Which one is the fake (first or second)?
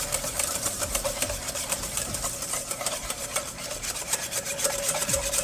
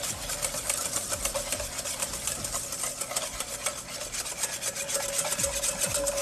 first